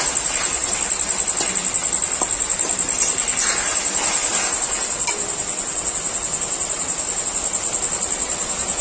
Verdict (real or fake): real